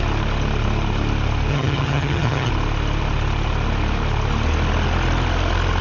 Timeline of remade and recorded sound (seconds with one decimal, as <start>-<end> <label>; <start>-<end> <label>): 0.0-1.5 recorded; 1.5-2.5 remade; 2.5-5.8 recorded